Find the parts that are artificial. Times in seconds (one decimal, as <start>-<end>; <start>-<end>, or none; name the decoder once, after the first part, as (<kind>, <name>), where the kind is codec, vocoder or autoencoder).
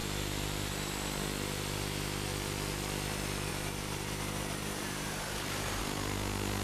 3.5-5.8 (vocoder, BigVGAN v2)